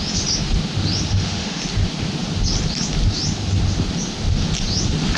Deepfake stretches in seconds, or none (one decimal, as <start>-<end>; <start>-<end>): 1.1-1.6